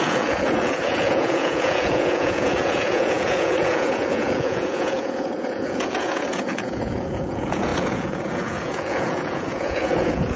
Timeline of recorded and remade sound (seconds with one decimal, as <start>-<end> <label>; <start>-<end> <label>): 0.0-10.4 remade